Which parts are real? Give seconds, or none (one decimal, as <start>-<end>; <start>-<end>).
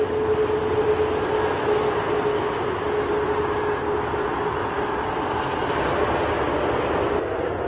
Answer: 0.0-4.6; 5.4-7.7